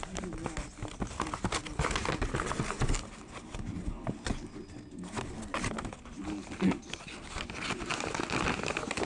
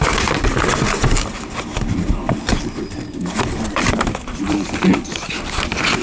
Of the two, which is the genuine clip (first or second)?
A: first